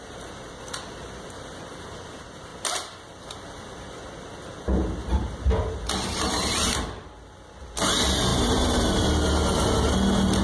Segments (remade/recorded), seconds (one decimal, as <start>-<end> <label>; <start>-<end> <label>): 0.0-8.3 recorded; 8.3-9.0 remade; 9.0-10.4 recorded